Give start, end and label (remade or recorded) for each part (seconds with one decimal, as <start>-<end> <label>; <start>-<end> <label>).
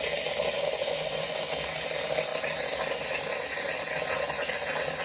0.0-0.5 recorded; 0.5-1.4 remade; 1.4-5.0 recorded